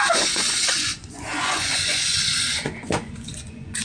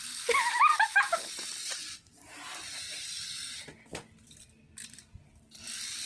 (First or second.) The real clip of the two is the second